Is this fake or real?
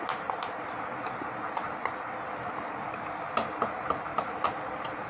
real